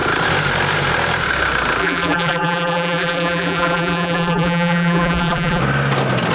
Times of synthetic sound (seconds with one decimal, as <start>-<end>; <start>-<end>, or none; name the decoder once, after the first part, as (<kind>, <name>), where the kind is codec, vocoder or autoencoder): 1.8-5.6 (vocoder, BigVGAN v2)